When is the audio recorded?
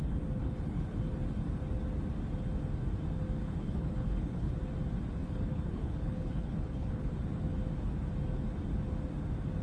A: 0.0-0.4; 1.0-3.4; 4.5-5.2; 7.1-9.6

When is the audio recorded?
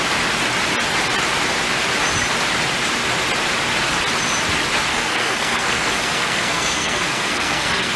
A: 0.0-4.9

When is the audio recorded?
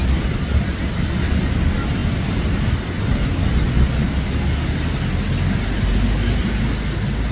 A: 0.0-7.3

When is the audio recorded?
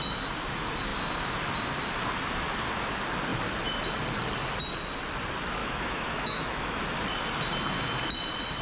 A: 0.0-5.6; 6.8-8.6